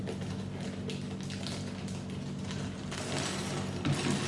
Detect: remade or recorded recorded